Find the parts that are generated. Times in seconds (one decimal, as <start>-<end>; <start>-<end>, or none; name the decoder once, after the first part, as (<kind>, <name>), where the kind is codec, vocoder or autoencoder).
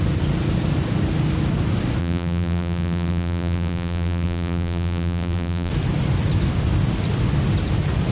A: 2.0-5.7 (vocoder, BigVGAN v2)